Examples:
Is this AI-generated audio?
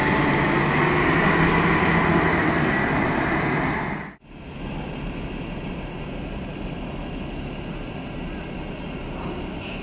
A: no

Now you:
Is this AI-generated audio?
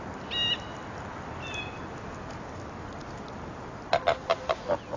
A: no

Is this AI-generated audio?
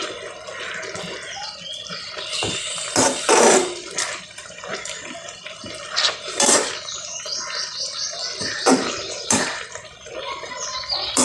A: yes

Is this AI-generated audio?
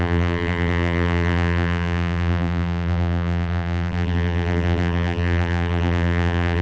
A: yes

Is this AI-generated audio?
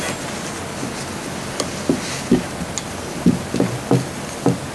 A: no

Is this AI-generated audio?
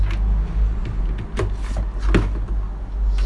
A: no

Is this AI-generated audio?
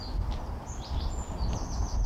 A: no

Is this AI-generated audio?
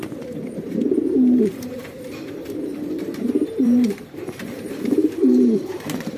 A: yes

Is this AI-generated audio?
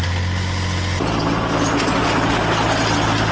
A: no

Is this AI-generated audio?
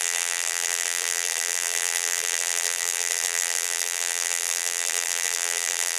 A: yes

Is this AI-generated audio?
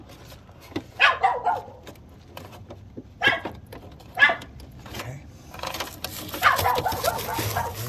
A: no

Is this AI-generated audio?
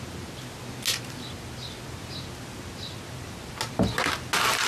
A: no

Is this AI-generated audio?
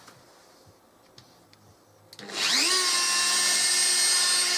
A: no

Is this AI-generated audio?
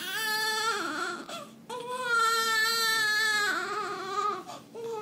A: no